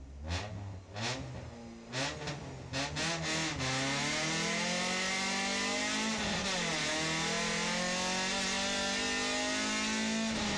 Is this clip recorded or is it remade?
recorded